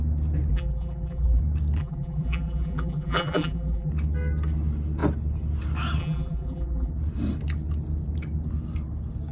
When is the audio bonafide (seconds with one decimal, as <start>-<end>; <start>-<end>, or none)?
0.0-0.5; 1.4-1.8; 3.9-6.0; 6.9-9.3